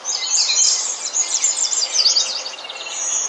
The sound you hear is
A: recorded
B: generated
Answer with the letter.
A